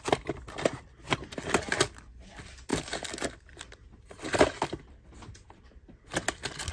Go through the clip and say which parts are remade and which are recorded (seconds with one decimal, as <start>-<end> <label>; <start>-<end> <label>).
0.0-6.7 recorded